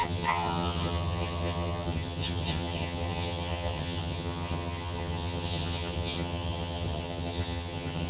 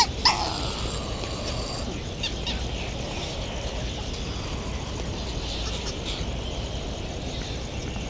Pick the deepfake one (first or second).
first